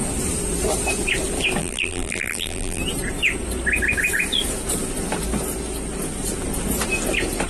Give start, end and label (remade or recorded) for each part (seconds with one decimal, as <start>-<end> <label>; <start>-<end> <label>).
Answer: 0.0-1.6 recorded; 1.6-2.8 remade; 2.8-7.5 recorded